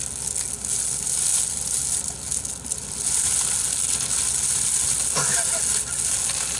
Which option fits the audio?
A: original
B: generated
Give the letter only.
A